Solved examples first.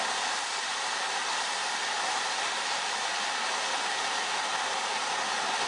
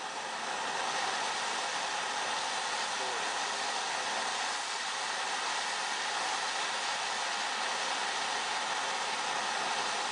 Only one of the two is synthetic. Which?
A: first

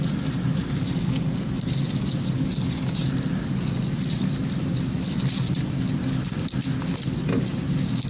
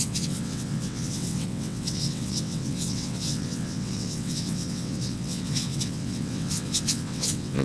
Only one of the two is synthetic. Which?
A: second